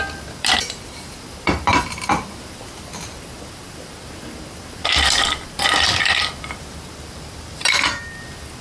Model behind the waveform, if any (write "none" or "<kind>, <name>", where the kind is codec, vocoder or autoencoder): vocoder, BigVGAN v2